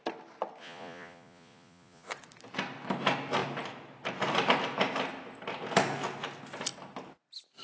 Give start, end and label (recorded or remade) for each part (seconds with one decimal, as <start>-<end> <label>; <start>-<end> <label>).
0.0-0.6 recorded; 0.6-2.1 remade; 2.1-7.6 recorded